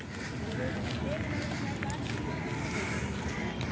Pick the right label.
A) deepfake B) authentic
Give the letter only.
B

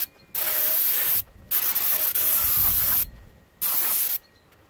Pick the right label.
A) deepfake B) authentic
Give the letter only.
B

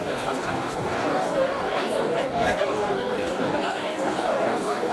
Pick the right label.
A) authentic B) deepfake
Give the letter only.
B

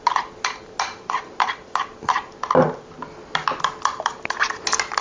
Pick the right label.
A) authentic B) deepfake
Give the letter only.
A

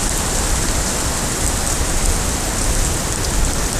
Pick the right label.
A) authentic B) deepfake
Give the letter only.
A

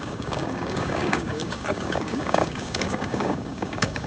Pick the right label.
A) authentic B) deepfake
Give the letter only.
B